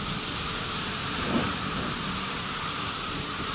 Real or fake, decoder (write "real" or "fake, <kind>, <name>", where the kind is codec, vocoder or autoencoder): real